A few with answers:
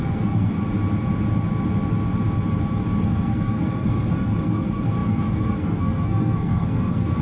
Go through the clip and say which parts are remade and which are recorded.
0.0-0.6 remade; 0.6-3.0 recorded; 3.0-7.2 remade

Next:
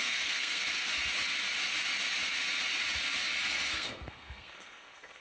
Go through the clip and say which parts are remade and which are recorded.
0.0-0.6 remade; 0.6-3.7 recorded; 3.7-5.2 remade

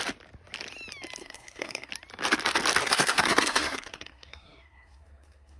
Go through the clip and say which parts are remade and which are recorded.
0.0-1.2 recorded; 1.2-1.9 remade; 1.9-2.8 recorded; 2.8-5.6 remade